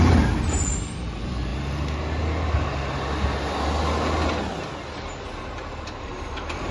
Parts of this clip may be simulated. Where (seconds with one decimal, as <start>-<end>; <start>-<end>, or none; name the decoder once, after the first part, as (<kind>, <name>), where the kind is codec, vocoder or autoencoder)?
0.0-1.5 (vocoder, BigVGAN v2); 5.5-6.7